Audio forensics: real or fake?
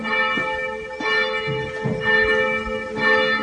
real